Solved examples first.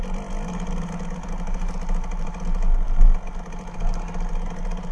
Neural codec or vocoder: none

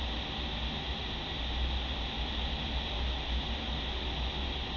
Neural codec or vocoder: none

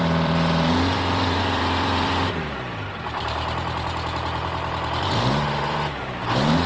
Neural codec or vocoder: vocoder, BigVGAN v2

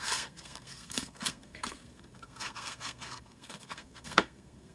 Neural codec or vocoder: codec, SNAC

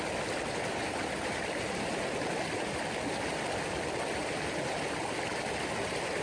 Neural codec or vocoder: none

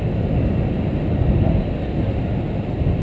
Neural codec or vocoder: none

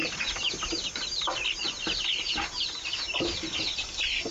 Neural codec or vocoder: none